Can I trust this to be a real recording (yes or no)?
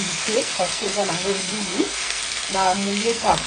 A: no